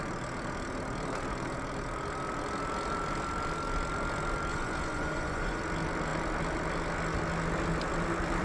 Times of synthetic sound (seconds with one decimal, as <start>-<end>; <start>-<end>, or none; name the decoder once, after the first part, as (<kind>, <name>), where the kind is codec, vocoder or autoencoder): 4.5-5.6 (vocoder, Vocos)